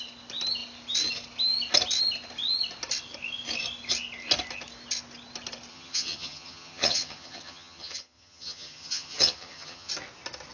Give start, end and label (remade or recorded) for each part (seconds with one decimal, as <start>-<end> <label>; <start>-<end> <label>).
0.0-5.7 recorded; 5.7-9.9 remade; 9.9-10.5 recorded